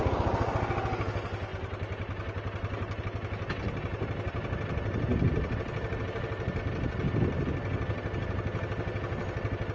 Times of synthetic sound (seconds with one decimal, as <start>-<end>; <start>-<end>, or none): none